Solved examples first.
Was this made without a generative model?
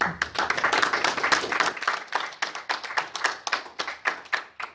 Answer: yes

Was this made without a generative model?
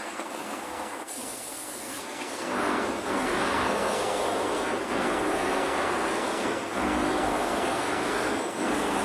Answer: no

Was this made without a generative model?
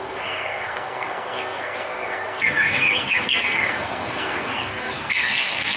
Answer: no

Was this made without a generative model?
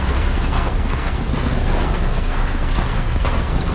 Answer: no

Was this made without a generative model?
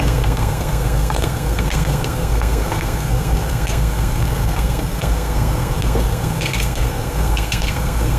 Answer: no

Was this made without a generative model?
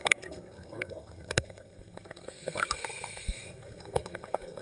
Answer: no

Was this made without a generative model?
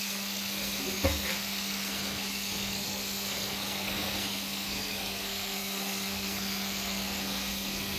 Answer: no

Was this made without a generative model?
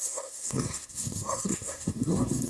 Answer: no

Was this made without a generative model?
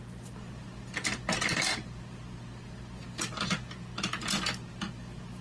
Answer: yes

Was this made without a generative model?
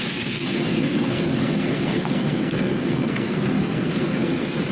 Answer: no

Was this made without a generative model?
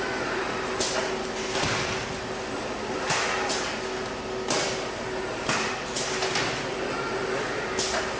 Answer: yes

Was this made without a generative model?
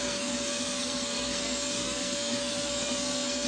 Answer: no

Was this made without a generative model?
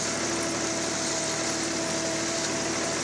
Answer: yes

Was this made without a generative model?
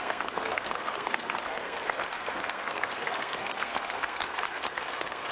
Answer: no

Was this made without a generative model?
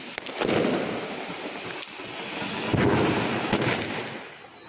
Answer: yes